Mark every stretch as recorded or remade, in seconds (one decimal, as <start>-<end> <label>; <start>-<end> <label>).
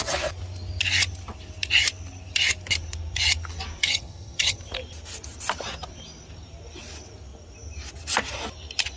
0.0-3.8 recorded; 3.8-4.6 remade; 4.6-9.0 recorded